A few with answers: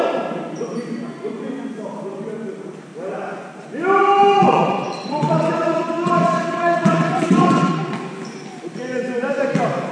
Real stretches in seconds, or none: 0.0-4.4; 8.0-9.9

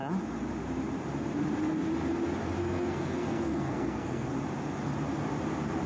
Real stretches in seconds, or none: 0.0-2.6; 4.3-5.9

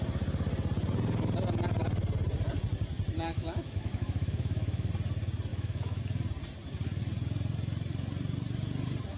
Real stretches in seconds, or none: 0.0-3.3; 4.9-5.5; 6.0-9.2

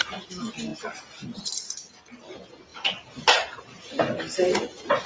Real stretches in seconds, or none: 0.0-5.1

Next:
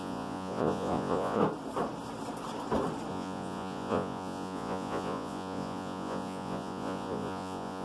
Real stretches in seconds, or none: 1.4-3.1

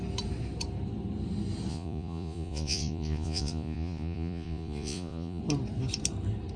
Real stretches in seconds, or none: 0.0-1.7; 5.4-6.6